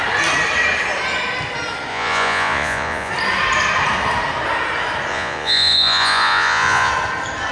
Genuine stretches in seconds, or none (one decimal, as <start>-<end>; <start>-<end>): 0.0-1.9; 3.1-5.1; 6.9-7.5